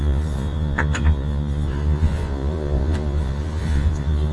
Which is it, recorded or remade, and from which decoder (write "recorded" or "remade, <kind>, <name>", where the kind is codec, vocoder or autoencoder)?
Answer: remade, vocoder, Vocos